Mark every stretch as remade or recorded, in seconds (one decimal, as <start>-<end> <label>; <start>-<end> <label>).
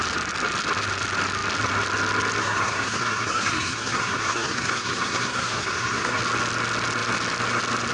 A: 0.0-2.4 recorded; 2.4-6.2 remade; 6.2-7.9 recorded